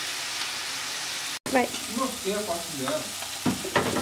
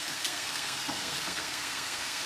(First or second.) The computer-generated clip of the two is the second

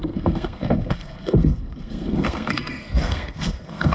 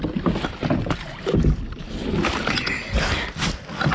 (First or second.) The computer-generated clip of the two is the first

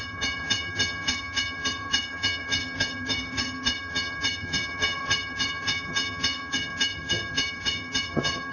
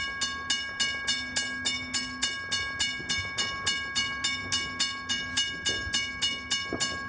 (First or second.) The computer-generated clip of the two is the first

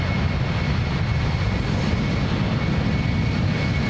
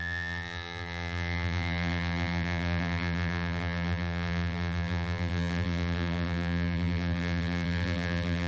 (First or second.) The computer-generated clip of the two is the second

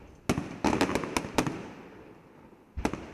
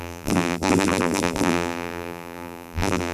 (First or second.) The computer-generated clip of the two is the second